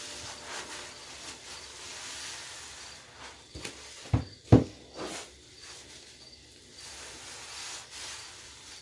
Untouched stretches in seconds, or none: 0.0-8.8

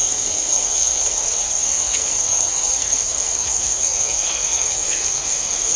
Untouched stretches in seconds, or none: none

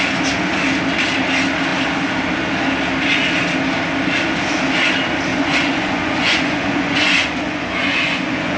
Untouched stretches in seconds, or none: 0.0-5.3

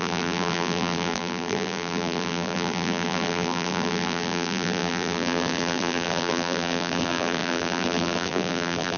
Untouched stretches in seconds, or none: none

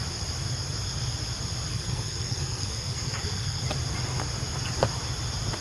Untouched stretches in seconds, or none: 0.0-1.7; 3.6-5.6